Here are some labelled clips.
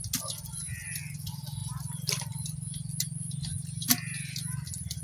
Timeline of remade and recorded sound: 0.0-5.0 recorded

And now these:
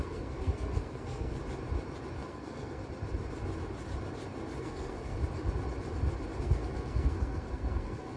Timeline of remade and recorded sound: 0.0-1.4 remade; 1.4-2.2 recorded; 2.2-2.8 remade; 2.8-4.6 recorded; 4.6-5.2 remade; 5.2-6.4 recorded; 6.4-8.2 remade

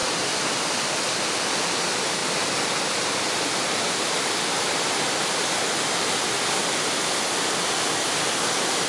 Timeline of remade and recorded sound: 0.0-8.9 recorded

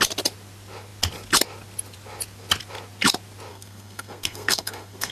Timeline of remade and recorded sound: 0.0-3.5 recorded; 3.5-5.1 remade

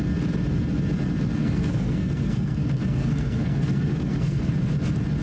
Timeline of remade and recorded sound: 0.0-1.4 recorded; 1.4-4.5 remade; 4.5-5.2 recorded

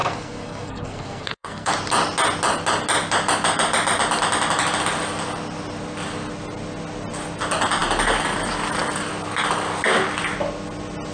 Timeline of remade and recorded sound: 0.0-1.7 remade; 1.7-11.1 recorded